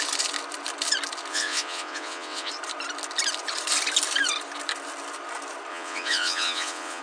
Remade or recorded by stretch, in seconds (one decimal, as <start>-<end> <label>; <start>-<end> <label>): 0.0-1.3 recorded; 1.3-2.5 remade; 2.5-5.7 recorded; 5.7-7.0 remade